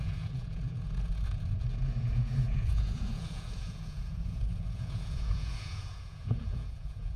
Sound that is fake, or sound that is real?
fake